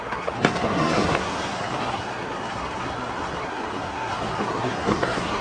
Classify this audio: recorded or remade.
remade